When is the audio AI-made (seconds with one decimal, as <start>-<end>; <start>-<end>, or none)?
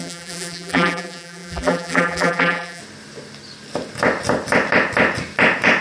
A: 0.0-2.8